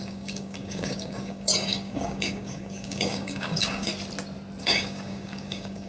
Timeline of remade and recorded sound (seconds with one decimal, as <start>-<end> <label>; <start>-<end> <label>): 0.0-3.9 remade; 3.9-4.6 recorded; 4.6-5.9 remade